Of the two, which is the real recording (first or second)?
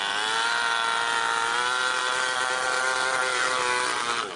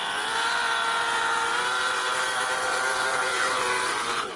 first